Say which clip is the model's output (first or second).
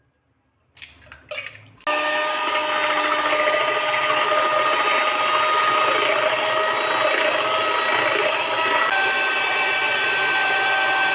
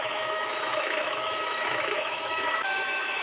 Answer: second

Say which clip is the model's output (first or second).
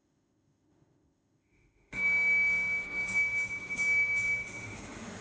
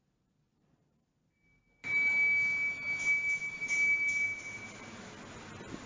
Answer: first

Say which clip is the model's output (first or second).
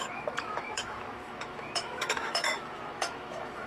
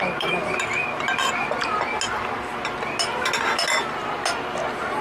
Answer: first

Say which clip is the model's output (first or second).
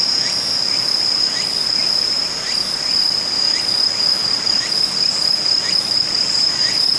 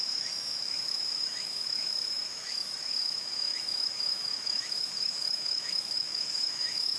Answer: second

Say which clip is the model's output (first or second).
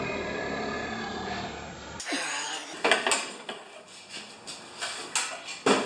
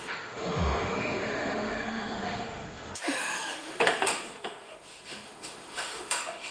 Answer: second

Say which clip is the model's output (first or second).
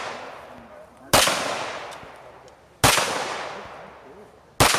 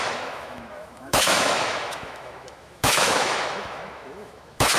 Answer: second